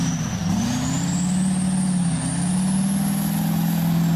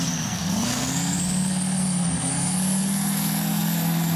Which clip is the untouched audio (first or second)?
first